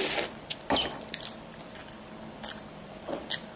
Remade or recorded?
recorded